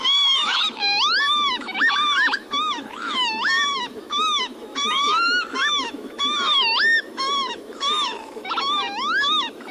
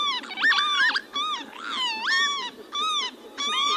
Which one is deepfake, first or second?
first